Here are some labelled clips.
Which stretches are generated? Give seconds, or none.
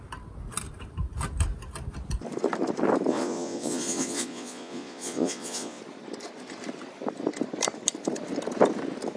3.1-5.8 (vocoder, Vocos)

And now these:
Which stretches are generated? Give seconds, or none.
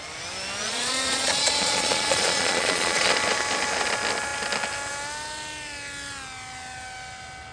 0.6-3.1 (vocoder, Vocos)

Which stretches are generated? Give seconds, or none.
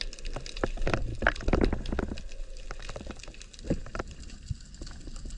none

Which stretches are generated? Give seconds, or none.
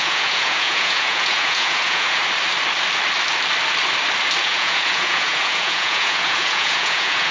0.0-2.2 (vocoder, Vocos); 4.4-7.3